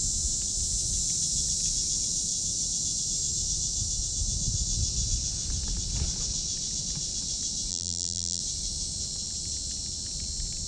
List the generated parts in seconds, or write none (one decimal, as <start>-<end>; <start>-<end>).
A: 7.7-8.4